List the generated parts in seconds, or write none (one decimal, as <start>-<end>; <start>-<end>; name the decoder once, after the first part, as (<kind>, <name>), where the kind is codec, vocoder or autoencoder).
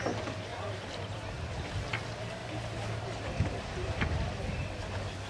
0.5-1.2 (vocoder, BigVGAN v2); 2.4-4.6